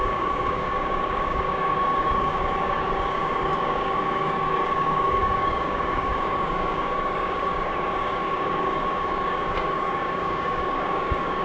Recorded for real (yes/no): no